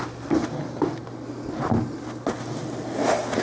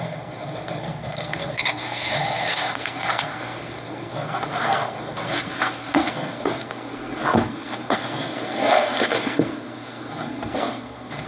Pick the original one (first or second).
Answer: first